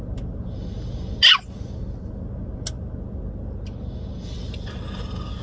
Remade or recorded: recorded